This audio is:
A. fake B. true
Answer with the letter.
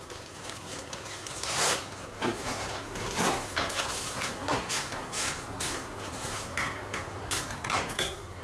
A